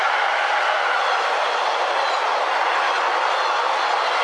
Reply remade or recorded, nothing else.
recorded